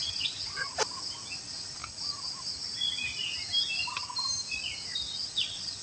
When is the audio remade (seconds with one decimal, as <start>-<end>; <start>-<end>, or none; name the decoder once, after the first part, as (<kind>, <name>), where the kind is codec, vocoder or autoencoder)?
0.0-0.6 (vocoder, WaveNeXt); 1.4-1.8; 5.3-5.8